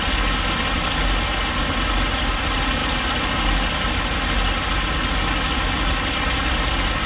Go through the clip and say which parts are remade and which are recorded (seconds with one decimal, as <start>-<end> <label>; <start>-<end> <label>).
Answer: 0.0-7.1 recorded